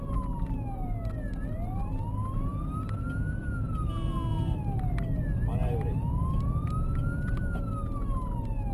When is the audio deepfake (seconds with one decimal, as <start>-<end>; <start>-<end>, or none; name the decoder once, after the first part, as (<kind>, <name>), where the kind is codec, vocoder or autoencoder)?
none